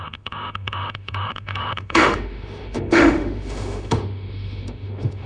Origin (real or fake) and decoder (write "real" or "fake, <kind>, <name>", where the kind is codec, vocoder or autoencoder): fake, autoencoder, DAC-VAE